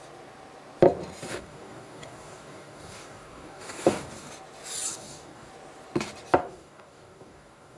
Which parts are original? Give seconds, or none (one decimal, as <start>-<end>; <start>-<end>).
0.0-1.3; 4.3-4.9; 5.5-6.4